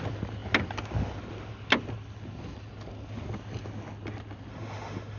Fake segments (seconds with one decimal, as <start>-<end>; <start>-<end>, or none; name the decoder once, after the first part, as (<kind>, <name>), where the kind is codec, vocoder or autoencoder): 4.5-5.2 (autoencoder, DAC-VAE)